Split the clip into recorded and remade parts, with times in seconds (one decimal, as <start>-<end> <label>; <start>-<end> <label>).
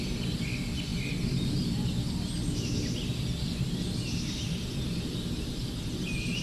0.0-6.4 recorded